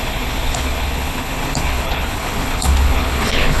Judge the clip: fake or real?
fake